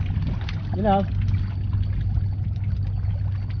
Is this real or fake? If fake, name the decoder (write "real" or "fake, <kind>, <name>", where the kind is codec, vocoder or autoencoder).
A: real